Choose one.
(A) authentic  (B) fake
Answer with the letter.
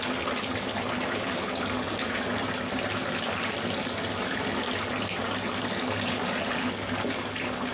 A